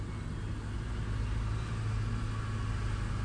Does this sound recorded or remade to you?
recorded